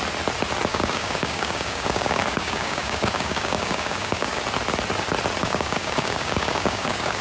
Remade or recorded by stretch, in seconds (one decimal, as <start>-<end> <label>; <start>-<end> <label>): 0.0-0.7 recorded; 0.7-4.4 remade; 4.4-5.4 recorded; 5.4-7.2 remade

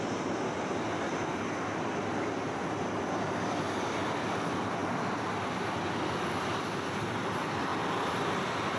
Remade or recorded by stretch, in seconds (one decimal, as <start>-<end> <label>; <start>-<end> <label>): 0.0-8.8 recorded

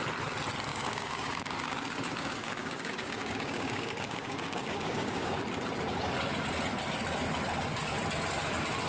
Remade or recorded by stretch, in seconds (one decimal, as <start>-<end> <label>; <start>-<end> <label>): 0.0-0.7 recorded; 0.7-5.4 remade; 5.4-8.9 recorded